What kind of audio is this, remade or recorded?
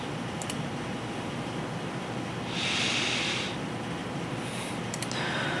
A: recorded